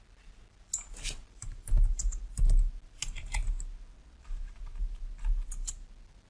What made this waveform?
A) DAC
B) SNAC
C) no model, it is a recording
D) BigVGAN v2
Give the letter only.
C